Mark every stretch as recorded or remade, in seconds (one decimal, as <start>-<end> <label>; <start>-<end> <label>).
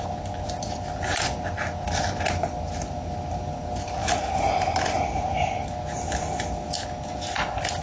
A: 0.0-7.8 recorded